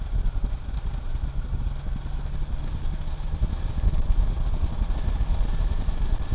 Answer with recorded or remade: recorded